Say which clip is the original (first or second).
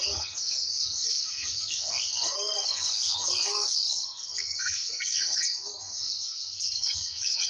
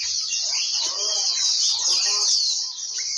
second